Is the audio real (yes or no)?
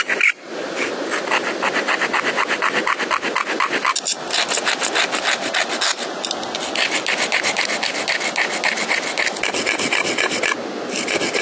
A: yes